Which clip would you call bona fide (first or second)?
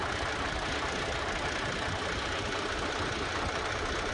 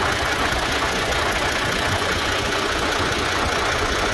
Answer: first